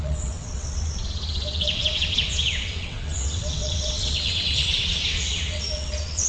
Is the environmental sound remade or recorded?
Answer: remade